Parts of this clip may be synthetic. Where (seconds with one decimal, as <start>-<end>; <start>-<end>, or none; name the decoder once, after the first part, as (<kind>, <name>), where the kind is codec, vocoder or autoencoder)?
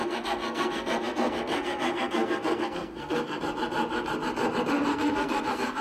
0.0-3.4 (codec, SNAC); 4.9-5.8